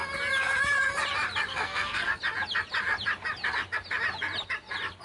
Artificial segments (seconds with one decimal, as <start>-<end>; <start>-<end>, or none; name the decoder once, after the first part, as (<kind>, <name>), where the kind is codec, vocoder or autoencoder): 1.5-2.2 (codec, SNAC)